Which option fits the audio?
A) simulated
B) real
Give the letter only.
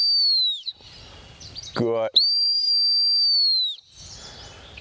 B